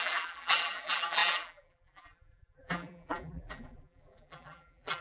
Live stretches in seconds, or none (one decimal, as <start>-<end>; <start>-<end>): none